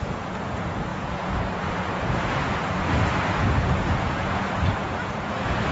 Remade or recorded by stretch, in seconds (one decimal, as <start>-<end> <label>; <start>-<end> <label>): 0.0-5.7 remade